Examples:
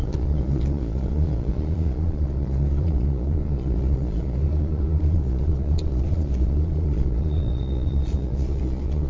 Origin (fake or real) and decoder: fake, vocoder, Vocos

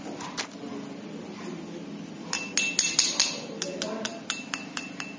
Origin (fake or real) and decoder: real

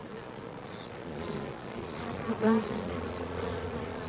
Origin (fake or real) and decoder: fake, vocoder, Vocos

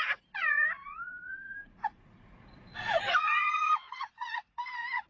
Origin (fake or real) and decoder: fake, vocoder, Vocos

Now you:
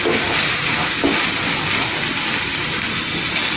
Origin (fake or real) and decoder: real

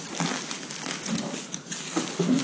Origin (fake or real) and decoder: real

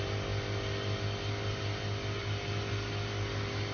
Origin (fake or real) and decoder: real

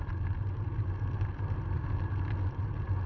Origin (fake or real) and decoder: real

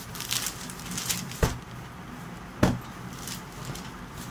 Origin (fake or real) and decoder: real